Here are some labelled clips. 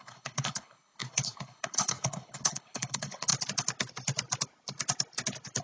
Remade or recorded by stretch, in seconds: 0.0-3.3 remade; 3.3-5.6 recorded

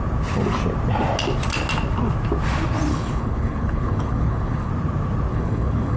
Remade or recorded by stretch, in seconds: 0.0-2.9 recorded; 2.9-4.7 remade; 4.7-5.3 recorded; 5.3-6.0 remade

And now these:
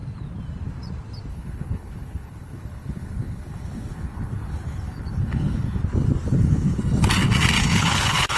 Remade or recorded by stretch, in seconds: 0.0-1.3 recorded; 1.3-5.8 remade; 5.8-6.3 recorded; 6.3-6.8 remade; 6.8-7.6 recorded; 7.6-8.4 remade

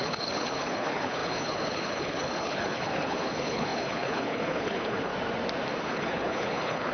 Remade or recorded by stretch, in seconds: 0.0-5.1 remade; 5.1-5.8 recorded; 5.8-6.9 remade